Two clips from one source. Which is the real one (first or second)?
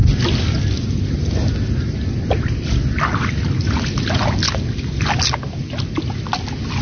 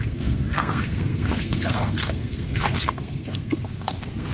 first